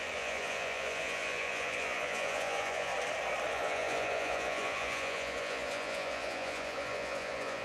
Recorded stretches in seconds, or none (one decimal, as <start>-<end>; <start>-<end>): 2.9-3.5